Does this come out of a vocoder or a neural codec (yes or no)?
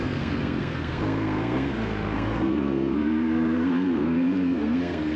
yes